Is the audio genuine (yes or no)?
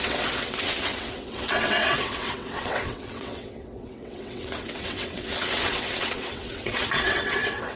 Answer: no